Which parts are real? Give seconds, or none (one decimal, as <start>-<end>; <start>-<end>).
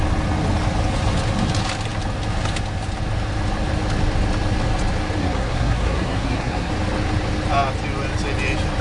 0.0-5.2; 6.7-8.8